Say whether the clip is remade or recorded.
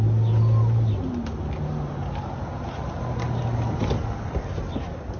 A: recorded